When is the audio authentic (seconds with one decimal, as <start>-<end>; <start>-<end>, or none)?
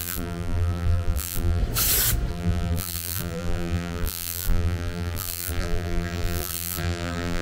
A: 1.6-2.3